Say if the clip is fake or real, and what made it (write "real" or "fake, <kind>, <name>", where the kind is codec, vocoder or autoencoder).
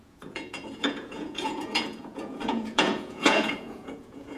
fake, vocoder, Vocos